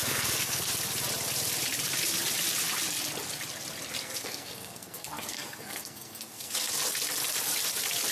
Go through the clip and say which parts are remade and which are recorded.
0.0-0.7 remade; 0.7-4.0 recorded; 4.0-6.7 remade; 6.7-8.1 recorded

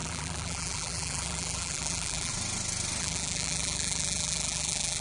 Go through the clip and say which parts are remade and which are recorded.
0.0-2.3 remade; 2.3-3.0 recorded; 3.0-5.0 remade

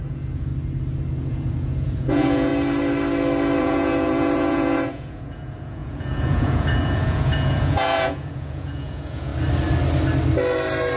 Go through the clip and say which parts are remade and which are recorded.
0.0-0.5 remade; 0.5-1.2 recorded; 1.2-2.5 remade; 2.5-3.6 recorded; 3.6-9.3 remade; 9.3-11.0 recorded

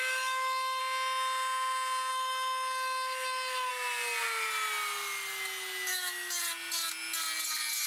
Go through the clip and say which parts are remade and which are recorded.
0.0-0.8 remade; 0.8-2.1 recorded; 2.1-3.7 remade; 3.7-5.9 recorded; 5.9-6.4 remade; 6.4-7.9 recorded